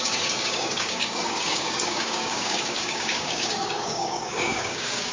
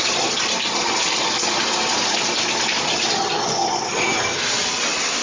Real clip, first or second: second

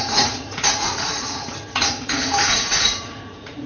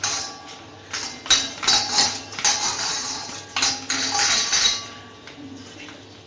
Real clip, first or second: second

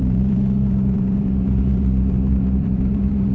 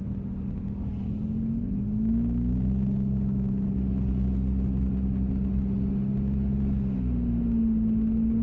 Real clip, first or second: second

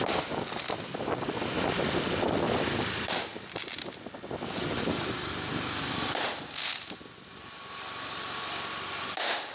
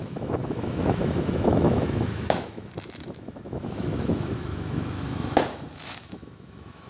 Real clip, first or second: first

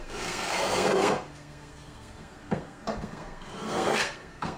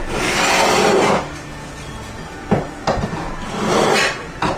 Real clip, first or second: second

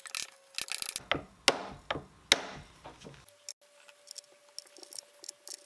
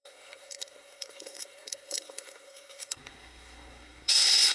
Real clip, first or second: first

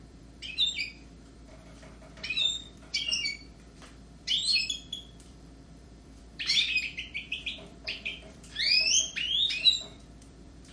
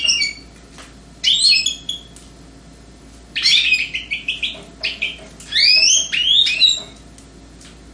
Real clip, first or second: second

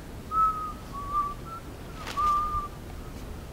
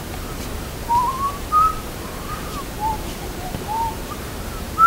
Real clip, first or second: first